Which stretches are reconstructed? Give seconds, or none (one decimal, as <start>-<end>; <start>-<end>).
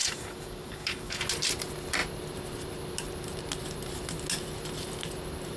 0.0-1.2